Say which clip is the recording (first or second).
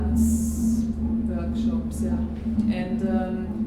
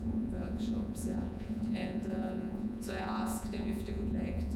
first